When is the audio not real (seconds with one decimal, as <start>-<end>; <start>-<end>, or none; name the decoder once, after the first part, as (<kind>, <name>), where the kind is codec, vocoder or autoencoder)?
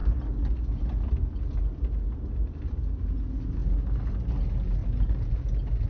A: 4.8-5.4 (vocoder, BigVGAN v2)